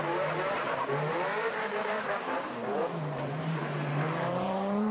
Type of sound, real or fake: fake